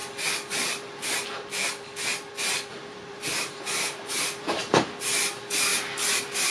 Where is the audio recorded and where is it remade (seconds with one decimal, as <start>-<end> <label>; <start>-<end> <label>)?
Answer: 0.0-2.7 recorded; 2.7-4.9 remade; 4.9-6.5 recorded